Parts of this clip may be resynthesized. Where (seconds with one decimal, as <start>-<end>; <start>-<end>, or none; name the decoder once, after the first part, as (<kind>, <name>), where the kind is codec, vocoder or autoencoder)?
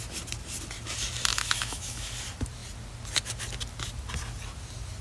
1.3-2.1 (autoencoder, DAC-VAE)